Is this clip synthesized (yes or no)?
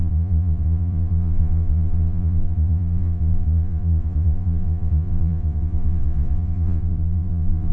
yes